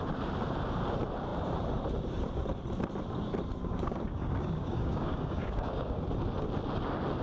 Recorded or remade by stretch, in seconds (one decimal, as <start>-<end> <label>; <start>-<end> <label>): 0.0-3.6 recorded; 3.6-6.0 remade; 6.0-7.2 recorded

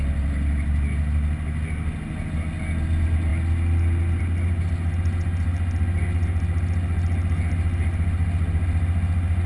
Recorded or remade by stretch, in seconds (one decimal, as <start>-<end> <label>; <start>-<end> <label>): 0.0-9.5 recorded

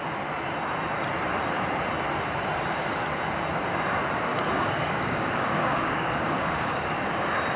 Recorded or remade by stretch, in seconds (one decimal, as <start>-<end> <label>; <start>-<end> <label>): 0.0-4.3 recorded; 4.3-7.1 remade; 7.1-7.6 recorded